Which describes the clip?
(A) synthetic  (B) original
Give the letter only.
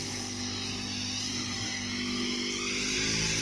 B